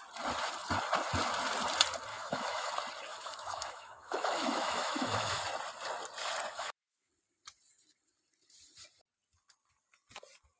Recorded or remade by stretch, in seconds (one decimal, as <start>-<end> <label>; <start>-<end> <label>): 0.0-2.1 recorded; 2.1-2.7 remade; 2.7-3.1 recorded; 3.1-5.4 remade; 5.4-6.5 recorded; 6.5-7.1 remade; 7.1-10.6 recorded